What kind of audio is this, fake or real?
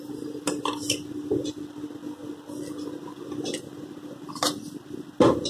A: real